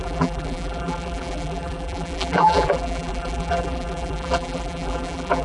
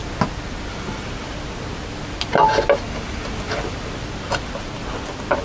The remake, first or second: first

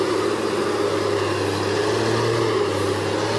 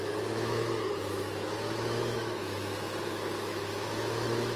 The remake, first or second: second